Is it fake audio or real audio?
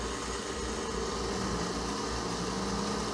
real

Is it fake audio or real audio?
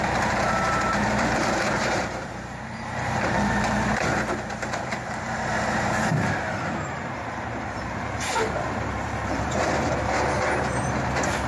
fake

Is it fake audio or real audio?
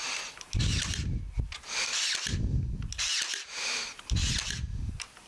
real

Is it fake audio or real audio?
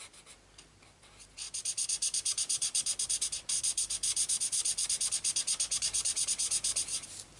fake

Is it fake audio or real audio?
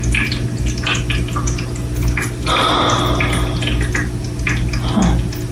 real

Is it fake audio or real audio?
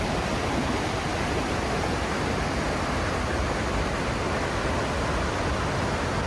real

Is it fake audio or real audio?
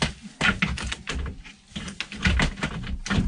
real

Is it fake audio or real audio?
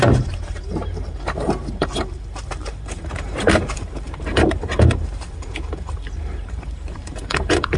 fake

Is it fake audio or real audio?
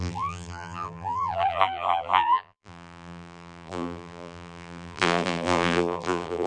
fake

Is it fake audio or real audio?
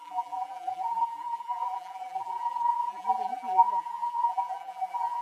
fake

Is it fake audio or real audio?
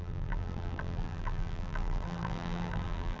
fake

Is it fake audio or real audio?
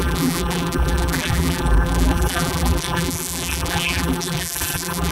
fake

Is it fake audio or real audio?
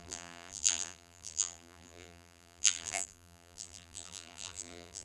fake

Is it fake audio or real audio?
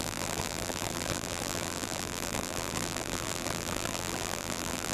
fake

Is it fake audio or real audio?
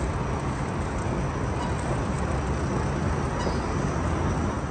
real